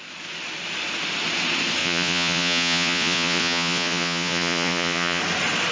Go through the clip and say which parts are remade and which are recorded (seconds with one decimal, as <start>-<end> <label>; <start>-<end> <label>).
0.0-1.8 recorded; 1.8-5.2 remade; 5.2-5.7 recorded